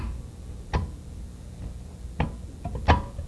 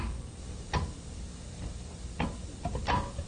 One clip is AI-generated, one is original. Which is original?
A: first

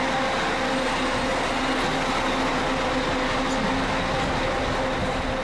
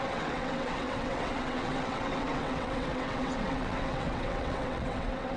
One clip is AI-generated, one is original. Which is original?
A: first